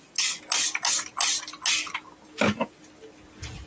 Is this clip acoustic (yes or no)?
yes